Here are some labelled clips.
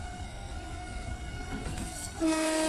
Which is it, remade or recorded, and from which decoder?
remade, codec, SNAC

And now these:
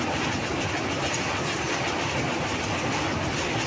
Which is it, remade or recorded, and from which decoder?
recorded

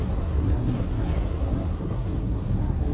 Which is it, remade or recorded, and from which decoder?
remade, codec, SNAC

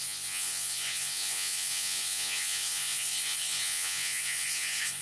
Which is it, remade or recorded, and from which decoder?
remade, vocoder, Vocos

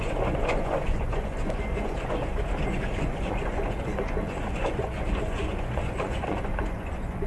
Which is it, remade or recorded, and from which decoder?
remade, vocoder, Vocos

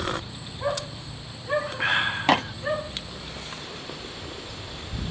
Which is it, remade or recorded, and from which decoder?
remade, vocoder, BigVGAN v2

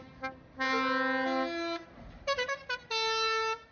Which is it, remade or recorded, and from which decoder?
recorded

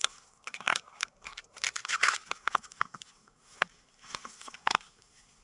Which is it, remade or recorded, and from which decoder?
remade, codec, SNAC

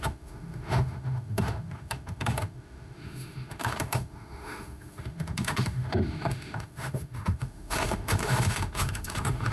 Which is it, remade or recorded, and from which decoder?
remade, autoencoder, DAC-VAE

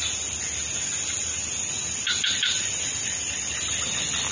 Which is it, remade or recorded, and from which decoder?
recorded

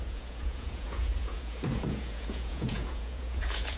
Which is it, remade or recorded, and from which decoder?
remade, vocoder, Vocos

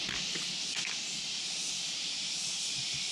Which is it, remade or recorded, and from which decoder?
recorded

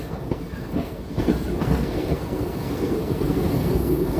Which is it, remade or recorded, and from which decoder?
remade, codec, SNAC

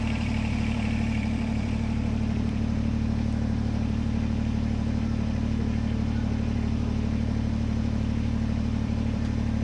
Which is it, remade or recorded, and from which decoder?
remade, vocoder, BigVGAN v2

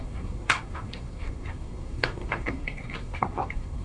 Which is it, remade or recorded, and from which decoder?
remade, codec, SNAC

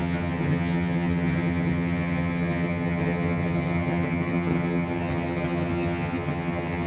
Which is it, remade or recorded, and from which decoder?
remade, vocoder, HiFi-GAN